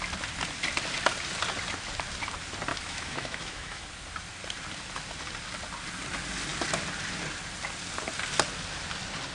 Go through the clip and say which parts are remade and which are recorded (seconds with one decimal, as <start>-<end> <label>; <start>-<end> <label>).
0.0-2.7 recorded; 2.7-3.9 remade; 3.9-9.3 recorded